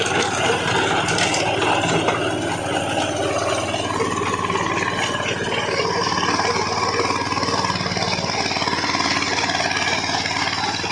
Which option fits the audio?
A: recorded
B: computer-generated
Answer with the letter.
A